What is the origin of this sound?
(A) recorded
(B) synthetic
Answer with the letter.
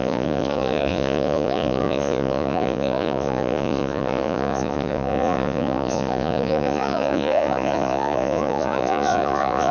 B